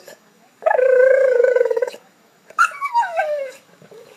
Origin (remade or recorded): remade